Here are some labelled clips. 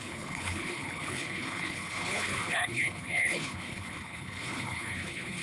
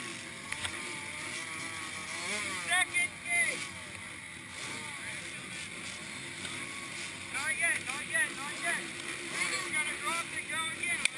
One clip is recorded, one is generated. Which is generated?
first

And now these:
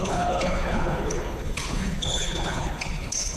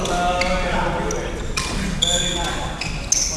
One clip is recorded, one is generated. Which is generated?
first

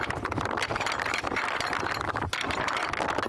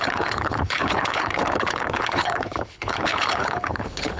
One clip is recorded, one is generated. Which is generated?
second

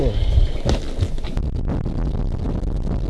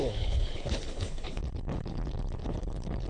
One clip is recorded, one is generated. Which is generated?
second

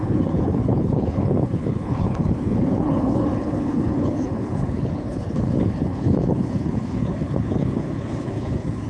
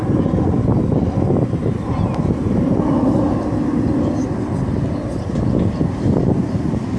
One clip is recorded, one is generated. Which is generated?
first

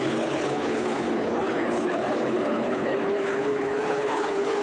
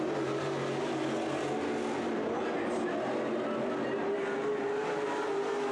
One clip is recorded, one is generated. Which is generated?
first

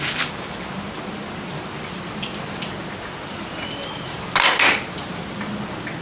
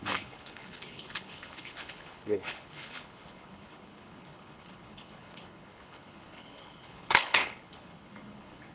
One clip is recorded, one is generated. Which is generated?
second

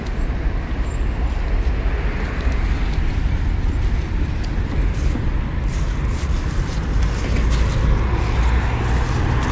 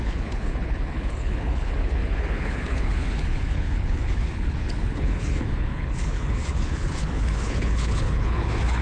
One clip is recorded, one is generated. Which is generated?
second